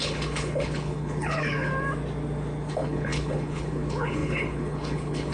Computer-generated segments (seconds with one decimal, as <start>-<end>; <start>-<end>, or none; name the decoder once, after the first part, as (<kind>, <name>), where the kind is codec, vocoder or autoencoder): 0.0-1.7 (codec, HILCodec); 2.7-5.3